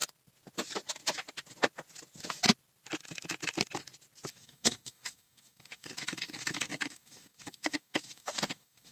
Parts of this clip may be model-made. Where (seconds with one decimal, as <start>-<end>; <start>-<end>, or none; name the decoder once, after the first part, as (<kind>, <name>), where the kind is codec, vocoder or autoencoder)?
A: 4.3-8.9 (codec, DAC)